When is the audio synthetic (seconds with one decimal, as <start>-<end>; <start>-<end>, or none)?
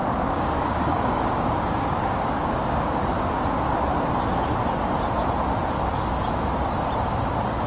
0.0-3.0